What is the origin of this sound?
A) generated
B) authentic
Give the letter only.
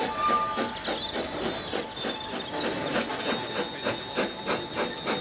B